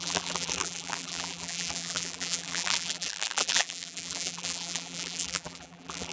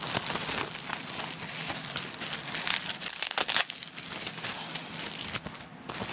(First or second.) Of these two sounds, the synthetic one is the first